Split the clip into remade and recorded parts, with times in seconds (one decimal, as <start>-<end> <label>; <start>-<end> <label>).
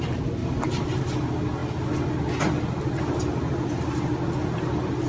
0.0-0.4 recorded; 0.4-1.0 remade; 1.0-5.1 recorded